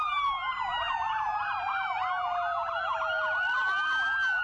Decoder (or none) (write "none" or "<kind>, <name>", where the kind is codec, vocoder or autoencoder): none